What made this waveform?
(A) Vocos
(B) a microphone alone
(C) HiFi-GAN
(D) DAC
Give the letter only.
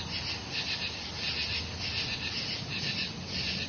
B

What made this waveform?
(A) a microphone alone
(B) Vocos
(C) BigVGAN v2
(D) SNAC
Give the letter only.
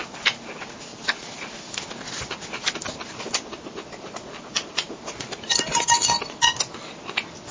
A